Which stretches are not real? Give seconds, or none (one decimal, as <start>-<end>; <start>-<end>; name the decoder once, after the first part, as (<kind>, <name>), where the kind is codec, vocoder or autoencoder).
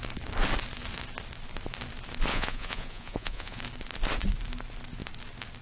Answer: 2.3-3.6 (vocoder, Vocos)